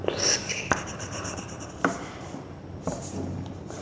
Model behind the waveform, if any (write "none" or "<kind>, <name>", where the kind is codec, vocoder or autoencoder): vocoder, BigVGAN v2